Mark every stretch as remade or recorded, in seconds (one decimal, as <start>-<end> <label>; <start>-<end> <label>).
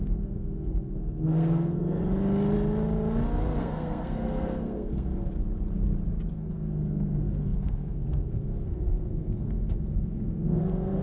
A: 0.0-2.0 remade; 2.0-3.6 recorded; 3.6-5.3 remade; 5.3-6.3 recorded; 6.3-11.0 remade